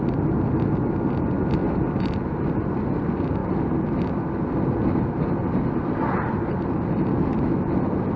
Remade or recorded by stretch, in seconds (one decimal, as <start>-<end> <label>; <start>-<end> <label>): 0.0-8.2 recorded